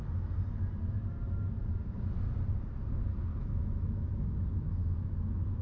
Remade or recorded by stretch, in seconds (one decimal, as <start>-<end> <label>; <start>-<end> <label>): 0.0-3.4 recorded; 3.4-5.6 remade

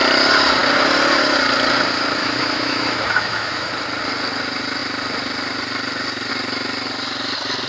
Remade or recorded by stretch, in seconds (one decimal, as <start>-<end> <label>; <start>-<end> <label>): 0.0-2.2 recorded; 2.2-3.7 remade; 3.7-7.7 recorded